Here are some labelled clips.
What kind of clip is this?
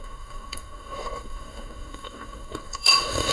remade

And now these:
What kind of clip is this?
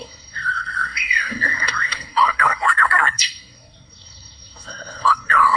remade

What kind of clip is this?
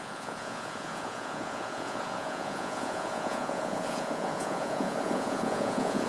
remade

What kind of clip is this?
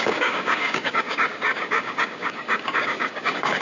remade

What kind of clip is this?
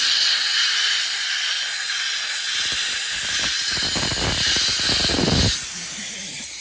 recorded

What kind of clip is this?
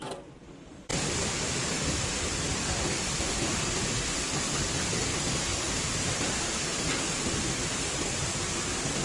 remade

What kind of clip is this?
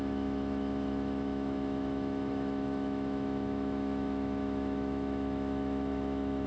remade